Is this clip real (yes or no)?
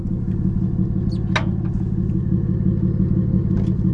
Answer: yes